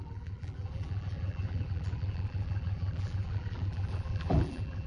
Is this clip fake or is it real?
fake